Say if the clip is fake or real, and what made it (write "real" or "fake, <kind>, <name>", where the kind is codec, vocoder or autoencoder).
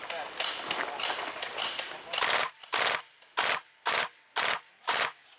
real